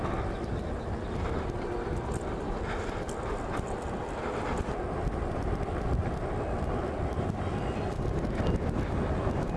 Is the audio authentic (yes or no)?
yes